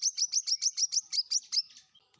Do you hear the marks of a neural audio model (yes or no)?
no